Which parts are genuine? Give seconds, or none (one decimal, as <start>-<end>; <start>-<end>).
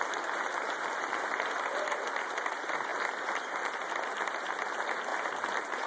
0.0-5.9